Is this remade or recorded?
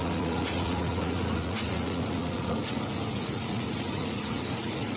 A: remade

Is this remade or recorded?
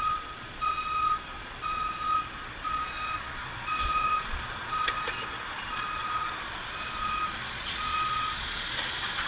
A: remade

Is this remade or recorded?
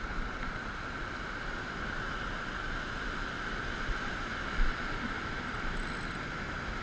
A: recorded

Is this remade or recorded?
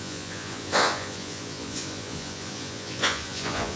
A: remade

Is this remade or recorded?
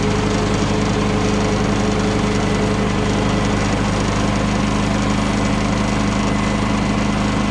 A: recorded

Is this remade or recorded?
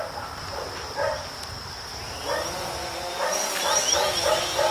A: recorded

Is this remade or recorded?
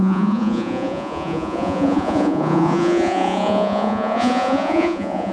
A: remade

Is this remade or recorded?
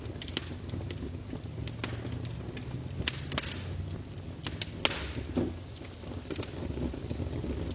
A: recorded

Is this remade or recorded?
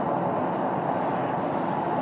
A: recorded